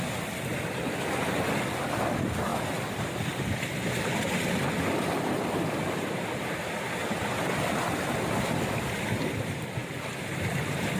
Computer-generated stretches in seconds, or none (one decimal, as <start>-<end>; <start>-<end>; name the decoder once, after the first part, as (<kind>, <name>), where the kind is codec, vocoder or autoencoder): none